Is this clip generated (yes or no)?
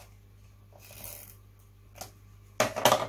no